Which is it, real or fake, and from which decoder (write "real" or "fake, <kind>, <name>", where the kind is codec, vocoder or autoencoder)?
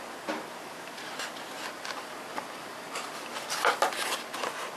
real